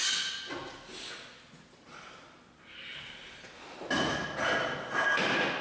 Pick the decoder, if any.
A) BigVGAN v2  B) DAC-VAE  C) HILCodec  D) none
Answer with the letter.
D